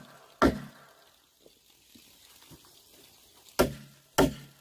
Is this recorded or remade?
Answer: recorded